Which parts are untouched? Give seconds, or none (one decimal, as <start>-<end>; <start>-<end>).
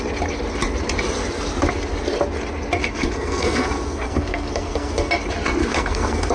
0.0-2.8; 5.1-5.6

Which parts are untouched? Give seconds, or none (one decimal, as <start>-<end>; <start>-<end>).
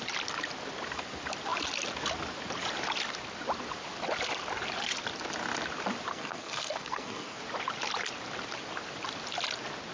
0.0-6.1; 7.4-9.9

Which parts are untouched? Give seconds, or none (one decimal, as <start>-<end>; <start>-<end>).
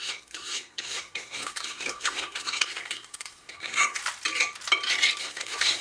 4.0-5.2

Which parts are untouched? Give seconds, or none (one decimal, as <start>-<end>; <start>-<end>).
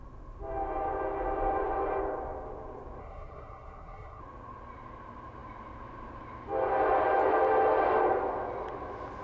0.0-3.0; 4.2-9.2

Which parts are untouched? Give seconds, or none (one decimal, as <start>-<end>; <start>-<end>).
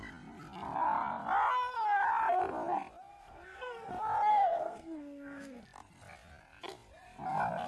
0.0-3.1; 3.9-4.3; 5.6-7.7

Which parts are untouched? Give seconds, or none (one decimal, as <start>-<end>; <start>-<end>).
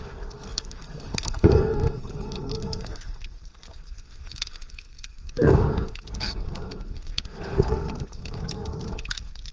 none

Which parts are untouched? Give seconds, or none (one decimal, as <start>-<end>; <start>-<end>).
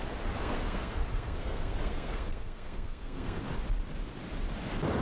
0.0-0.4; 3.4-5.0